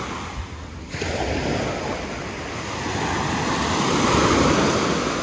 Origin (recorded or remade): recorded